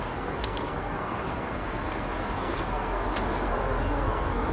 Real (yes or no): no